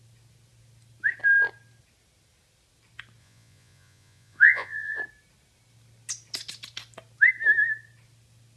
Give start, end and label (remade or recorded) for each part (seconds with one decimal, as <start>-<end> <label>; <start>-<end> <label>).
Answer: 0.0-3.2 recorded; 3.2-5.0 remade; 5.0-8.6 recorded